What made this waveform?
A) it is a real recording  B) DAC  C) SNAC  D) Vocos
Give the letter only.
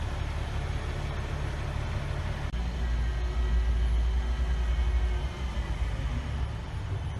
A